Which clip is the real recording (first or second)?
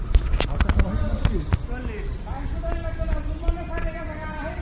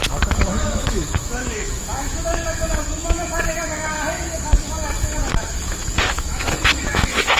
first